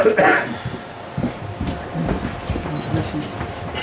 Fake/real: real